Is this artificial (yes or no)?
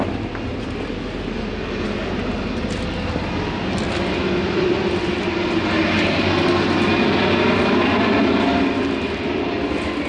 no